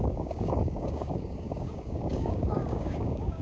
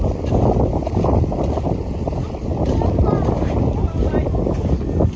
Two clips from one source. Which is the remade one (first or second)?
first